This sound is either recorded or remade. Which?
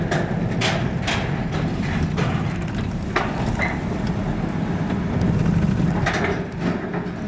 recorded